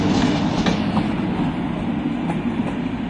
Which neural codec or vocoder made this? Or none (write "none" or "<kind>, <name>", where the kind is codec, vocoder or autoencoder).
none